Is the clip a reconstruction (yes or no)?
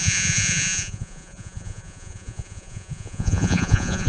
yes